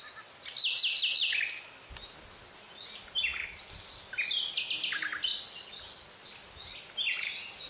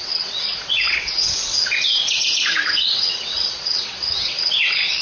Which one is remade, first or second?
second